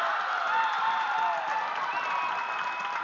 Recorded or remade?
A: recorded